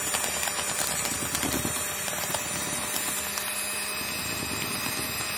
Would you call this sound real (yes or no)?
yes